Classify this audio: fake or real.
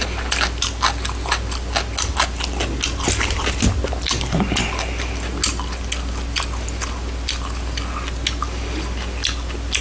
real